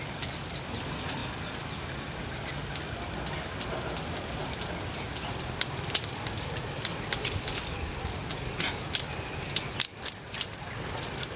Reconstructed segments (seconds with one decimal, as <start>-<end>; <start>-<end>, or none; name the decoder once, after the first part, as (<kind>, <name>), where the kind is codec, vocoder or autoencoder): none